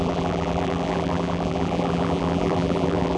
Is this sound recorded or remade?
remade